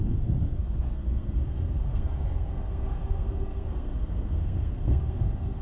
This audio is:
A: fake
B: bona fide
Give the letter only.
A